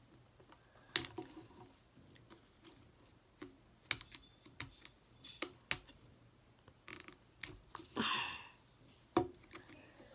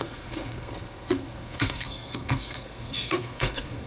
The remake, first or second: second